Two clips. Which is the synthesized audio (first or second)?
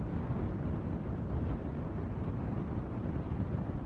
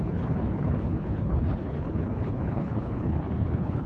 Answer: second